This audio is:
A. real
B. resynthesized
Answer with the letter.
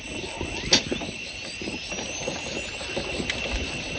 A